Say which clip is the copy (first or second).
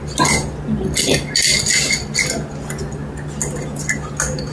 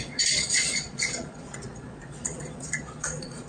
second